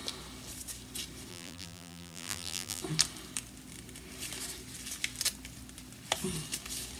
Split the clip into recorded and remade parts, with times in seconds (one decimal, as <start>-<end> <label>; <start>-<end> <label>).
0.0-1.3 recorded; 1.3-2.8 remade; 2.8-7.0 recorded